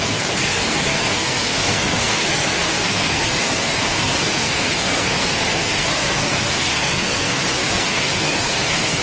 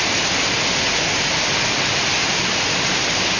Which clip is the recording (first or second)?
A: second